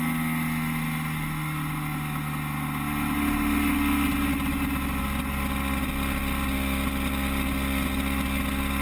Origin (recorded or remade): recorded